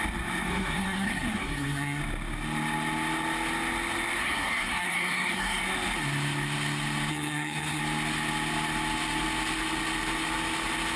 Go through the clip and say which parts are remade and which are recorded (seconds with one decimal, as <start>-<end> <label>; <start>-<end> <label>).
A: 0.0-0.5 recorded; 0.5-2.0 remade; 2.0-4.2 recorded; 4.2-5.6 remade; 5.6-7.1 recorded; 7.1-7.8 remade; 7.8-11.0 recorded